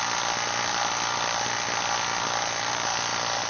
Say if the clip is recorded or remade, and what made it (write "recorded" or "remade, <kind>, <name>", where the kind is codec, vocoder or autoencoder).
recorded